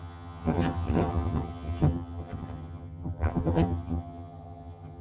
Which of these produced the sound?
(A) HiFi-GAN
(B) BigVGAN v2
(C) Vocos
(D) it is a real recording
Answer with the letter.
A